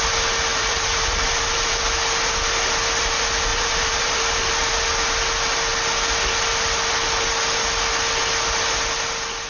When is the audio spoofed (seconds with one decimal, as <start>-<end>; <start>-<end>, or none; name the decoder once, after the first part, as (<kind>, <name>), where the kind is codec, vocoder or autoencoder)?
0.5-1.8 (vocoder, BigVGAN v2); 3.5-4.2